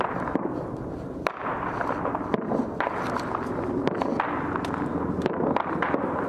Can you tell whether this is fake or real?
real